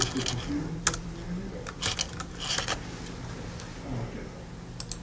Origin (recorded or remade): recorded